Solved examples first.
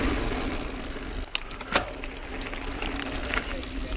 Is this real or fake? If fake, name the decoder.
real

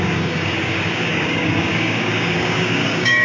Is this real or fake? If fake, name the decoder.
fake, codec, DAC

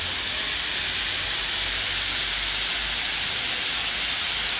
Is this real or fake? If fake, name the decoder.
real